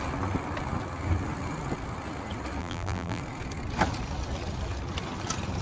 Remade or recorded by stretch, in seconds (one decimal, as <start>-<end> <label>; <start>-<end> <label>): 0.0-2.6 recorded; 2.6-3.2 remade; 3.2-5.6 recorded